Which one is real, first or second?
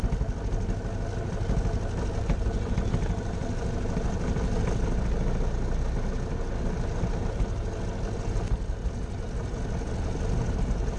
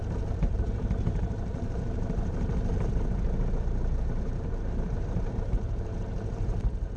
first